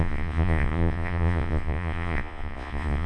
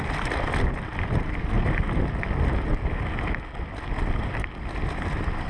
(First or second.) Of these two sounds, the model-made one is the first